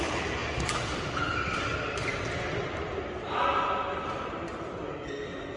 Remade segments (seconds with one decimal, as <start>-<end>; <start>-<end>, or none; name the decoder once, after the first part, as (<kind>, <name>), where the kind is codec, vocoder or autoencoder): none